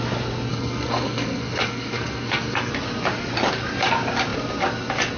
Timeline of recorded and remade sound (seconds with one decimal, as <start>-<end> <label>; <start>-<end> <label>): 0.0-0.5 recorded; 0.5-2.7 remade; 2.7-5.2 recorded